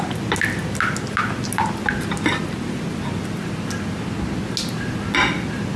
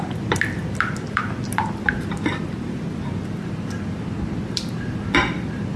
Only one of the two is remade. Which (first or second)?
second